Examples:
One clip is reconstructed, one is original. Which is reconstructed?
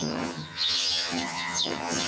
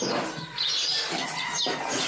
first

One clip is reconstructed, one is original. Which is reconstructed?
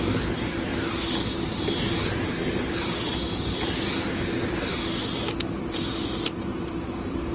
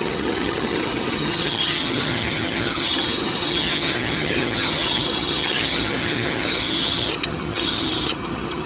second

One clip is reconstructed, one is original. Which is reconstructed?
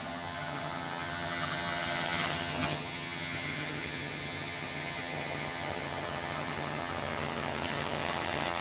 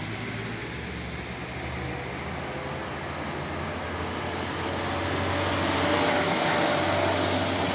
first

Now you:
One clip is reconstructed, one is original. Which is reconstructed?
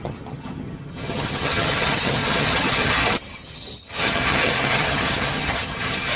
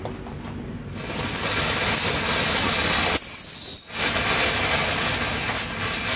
first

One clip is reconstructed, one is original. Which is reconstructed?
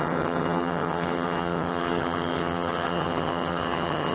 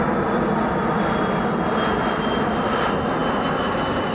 first